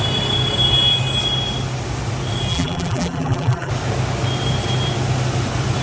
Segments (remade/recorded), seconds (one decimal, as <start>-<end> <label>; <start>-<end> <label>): 0.0-2.5 recorded; 2.5-3.7 remade; 3.7-5.8 recorded